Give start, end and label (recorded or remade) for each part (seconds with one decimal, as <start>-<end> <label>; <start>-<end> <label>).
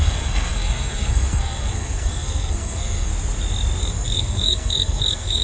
0.0-3.1 remade; 3.1-3.8 recorded; 3.8-5.4 remade